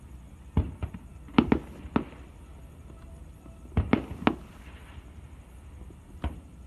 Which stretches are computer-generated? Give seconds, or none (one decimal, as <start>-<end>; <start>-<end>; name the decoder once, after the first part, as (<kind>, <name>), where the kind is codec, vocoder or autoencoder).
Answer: none